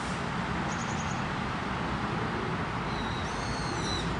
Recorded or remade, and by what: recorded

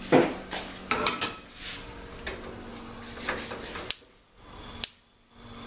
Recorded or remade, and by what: recorded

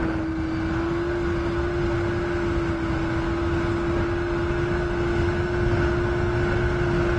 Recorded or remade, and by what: recorded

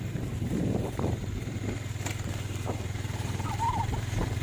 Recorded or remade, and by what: remade, vocoder, BigVGAN v2